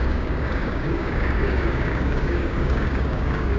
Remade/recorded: remade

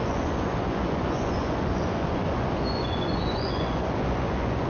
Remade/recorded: remade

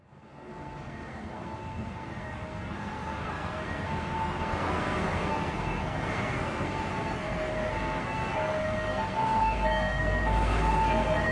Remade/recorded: remade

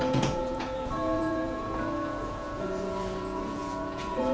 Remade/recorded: remade